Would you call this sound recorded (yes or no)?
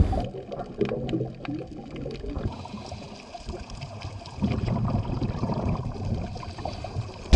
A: yes